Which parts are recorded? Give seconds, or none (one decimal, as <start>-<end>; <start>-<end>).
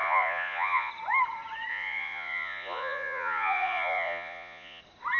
0.9-1.7; 4.8-5.2